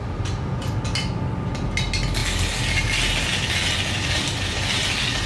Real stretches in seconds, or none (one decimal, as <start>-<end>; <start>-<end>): 0.0-5.3